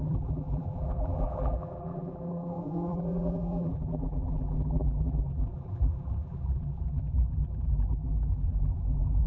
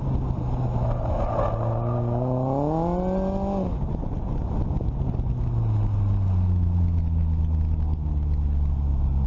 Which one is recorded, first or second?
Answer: second